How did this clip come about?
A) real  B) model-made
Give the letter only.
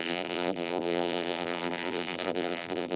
B